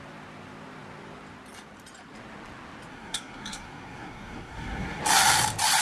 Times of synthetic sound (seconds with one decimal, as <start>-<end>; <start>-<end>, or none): 2.9-5.0